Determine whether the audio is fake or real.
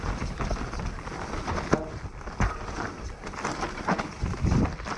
real